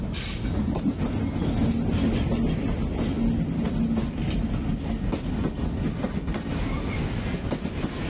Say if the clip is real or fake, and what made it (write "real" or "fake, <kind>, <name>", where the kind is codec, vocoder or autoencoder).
real